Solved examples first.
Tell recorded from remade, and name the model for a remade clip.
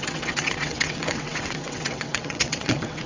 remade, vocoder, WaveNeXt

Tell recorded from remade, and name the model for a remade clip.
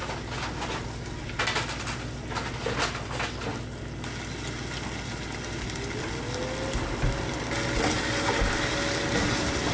recorded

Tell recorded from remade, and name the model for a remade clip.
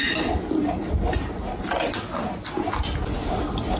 recorded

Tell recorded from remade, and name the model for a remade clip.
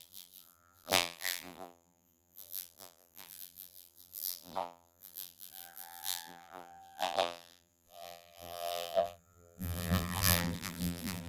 remade, vocoder, BigVGAN v2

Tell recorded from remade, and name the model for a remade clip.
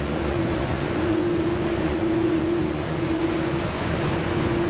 remade, vocoder, Vocos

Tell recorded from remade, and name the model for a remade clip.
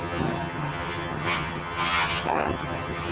remade, vocoder, HiFi-GAN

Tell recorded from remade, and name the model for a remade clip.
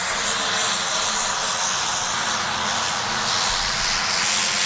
recorded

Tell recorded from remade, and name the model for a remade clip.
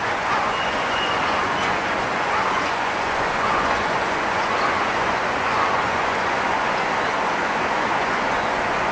remade, vocoder, Vocos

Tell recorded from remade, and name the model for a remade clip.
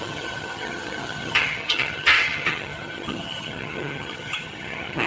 remade, vocoder, HiFi-GAN